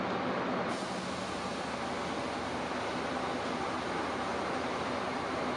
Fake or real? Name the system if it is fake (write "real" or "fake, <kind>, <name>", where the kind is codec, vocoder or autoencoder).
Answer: real